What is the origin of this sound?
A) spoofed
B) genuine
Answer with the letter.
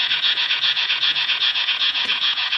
A